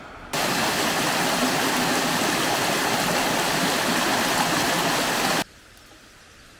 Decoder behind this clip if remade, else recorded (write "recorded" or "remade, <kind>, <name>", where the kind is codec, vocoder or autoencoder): recorded